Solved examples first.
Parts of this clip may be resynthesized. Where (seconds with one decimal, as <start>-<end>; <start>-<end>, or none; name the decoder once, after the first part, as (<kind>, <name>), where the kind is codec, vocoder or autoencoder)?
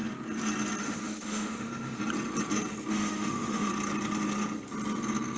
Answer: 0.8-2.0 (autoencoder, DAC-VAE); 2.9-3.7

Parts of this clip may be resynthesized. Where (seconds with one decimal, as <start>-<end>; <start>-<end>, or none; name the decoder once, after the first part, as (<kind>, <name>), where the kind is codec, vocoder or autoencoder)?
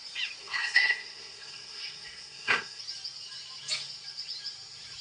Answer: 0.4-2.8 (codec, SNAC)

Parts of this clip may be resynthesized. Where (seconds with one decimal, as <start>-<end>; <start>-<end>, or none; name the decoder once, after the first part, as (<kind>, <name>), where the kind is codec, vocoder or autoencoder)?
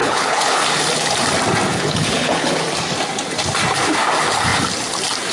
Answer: 0.0-0.6 (codec, HILCodec); 1.7-2.6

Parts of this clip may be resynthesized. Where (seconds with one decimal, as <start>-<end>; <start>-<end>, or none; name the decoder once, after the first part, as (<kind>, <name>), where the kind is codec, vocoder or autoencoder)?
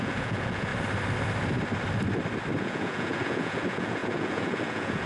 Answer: 0.0-0.7 (vocoder, Vocos); 2.6-5.1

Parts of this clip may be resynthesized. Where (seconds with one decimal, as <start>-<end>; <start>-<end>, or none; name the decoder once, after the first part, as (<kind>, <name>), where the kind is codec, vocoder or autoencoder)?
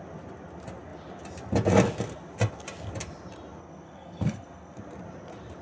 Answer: 3.6-4.8 (codec, SNAC)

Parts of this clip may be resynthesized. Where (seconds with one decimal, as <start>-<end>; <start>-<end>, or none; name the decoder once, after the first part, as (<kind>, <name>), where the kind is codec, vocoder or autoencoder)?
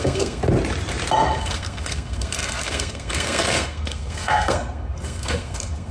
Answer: 0.0-0.4 (codec, SNAC); 1.4-5.9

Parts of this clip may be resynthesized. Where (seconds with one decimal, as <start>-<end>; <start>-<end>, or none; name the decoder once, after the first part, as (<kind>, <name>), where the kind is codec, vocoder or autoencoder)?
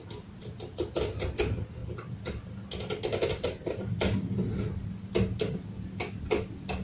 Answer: none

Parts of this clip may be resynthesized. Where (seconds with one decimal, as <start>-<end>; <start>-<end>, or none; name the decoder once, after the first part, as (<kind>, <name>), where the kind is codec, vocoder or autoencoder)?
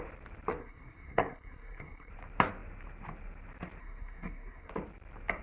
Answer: 0.6-2.1 (codec, SNAC); 3.8-4.7